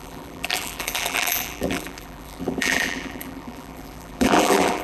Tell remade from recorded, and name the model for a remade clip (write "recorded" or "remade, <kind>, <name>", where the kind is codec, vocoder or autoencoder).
remade, vocoder, BigVGAN v2